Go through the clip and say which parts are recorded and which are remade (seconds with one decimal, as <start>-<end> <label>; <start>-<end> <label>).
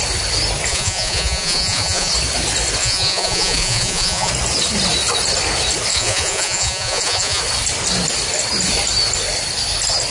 0.0-0.7 recorded; 0.7-2.1 remade; 2.1-2.8 recorded; 2.8-4.3 remade; 4.3-5.9 recorded; 5.9-7.4 remade; 7.4-10.1 recorded